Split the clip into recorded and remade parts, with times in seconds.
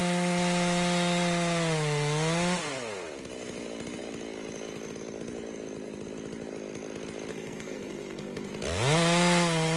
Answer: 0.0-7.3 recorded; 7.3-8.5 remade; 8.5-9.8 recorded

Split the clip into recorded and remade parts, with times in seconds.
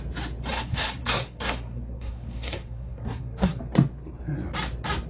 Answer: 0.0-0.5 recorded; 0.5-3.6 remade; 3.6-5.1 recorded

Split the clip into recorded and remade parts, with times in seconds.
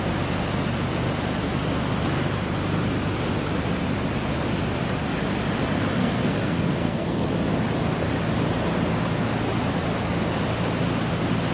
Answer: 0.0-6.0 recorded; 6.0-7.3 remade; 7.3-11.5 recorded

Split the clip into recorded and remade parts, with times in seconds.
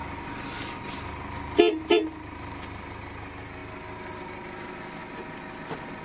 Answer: 0.0-6.0 recorded